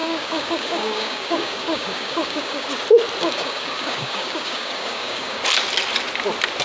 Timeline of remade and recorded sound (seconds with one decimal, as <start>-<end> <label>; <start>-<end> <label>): 0.0-2.7 remade; 2.7-3.2 recorded; 3.2-5.4 remade; 5.4-6.6 recorded